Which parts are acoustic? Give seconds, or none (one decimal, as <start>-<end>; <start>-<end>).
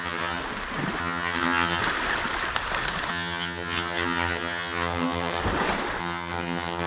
0.4-1.0; 1.8-3.1; 5.4-6.0